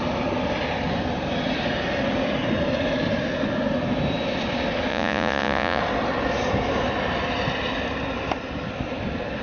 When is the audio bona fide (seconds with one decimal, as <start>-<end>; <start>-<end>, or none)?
0.0-4.9; 5.8-9.4